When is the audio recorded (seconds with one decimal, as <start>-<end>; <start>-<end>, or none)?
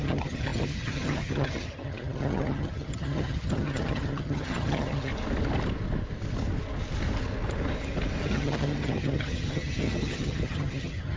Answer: 5.1-8.2